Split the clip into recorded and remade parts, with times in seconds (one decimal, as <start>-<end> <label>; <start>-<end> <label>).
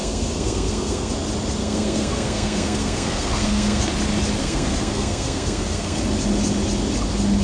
0.0-1.1 remade; 1.1-1.6 recorded; 1.6-3.9 remade; 3.9-4.4 recorded; 4.4-6.0 remade; 6.0-7.4 recorded